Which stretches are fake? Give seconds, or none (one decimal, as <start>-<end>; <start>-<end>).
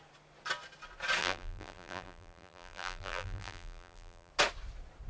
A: 1.2-4.3